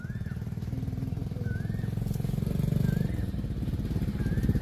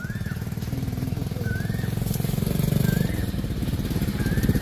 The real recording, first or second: first